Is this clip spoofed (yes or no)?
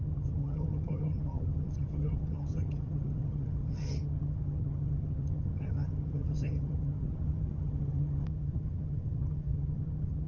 yes